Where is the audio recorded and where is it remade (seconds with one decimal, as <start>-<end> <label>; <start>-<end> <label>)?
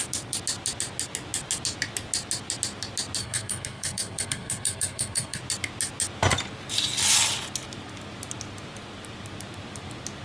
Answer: 0.0-3.2 recorded; 3.2-5.4 remade; 5.4-10.2 recorded